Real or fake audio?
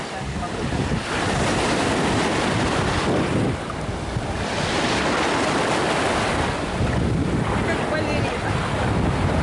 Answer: real